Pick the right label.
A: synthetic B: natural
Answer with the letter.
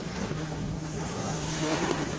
A